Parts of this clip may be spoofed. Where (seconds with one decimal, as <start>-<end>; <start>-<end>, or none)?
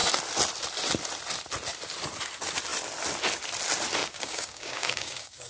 4.0-5.5